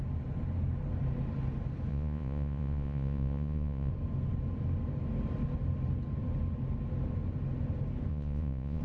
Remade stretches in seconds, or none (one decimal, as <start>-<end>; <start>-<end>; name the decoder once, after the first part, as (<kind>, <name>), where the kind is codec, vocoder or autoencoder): 1.9-3.9 (vocoder, Vocos); 8.1-8.8